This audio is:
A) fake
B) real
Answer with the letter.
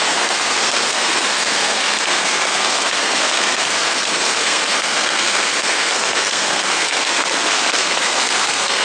A